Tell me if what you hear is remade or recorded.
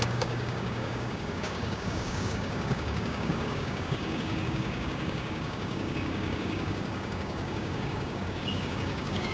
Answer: remade